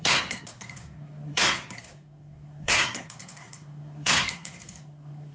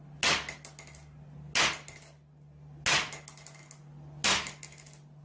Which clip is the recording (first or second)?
second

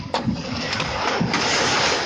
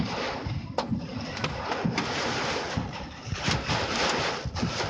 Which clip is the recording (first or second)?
second